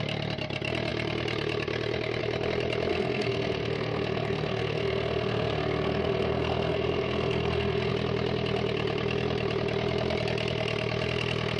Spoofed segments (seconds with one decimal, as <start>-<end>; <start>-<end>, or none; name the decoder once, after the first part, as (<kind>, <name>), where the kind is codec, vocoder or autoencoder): 2.9-7.9 (codec, SNAC)